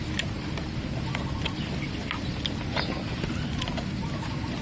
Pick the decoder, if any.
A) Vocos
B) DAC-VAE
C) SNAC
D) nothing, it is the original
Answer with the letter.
D